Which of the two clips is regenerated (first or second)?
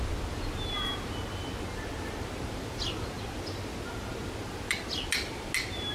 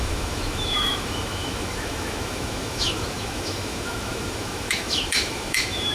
second